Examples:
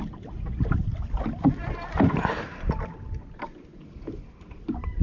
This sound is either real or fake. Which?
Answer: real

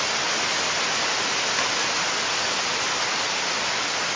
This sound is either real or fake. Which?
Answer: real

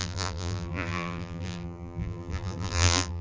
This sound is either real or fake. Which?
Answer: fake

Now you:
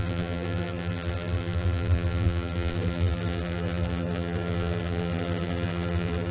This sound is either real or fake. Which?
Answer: fake